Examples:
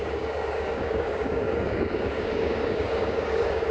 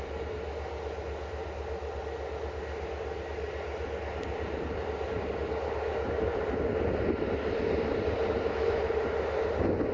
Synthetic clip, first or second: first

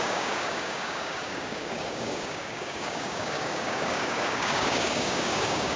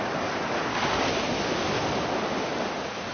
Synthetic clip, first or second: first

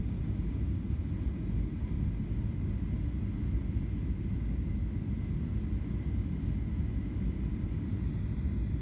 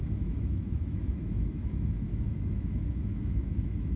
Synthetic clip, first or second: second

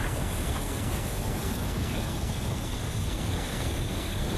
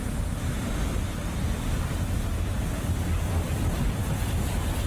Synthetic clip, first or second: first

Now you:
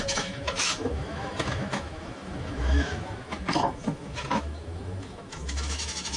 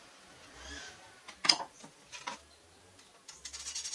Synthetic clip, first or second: first